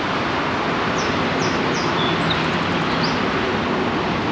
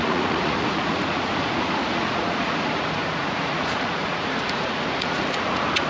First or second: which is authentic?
first